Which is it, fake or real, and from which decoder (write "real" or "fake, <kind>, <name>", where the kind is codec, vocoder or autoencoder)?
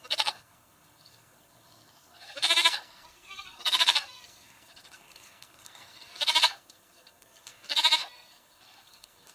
fake, codec, SNAC